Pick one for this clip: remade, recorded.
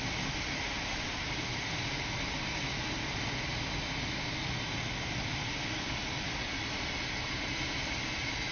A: recorded